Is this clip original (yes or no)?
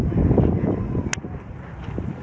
yes